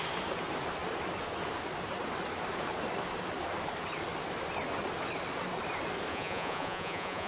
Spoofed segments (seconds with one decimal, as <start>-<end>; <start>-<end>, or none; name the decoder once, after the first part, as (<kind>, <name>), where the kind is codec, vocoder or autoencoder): 6.1-7.3 (vocoder, Vocos)

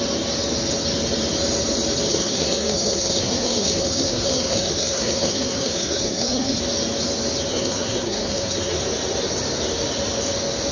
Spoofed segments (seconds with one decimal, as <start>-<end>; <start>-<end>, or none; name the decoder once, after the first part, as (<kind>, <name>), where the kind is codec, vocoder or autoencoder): 2.1-6.6 (codec, SNAC); 7.5-8.8

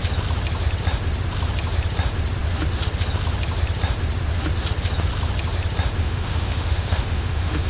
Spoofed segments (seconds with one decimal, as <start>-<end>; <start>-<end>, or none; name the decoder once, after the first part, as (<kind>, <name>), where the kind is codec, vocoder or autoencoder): 6.0-7.7 (autoencoder, DAC-VAE)